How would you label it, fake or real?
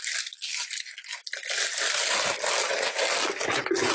real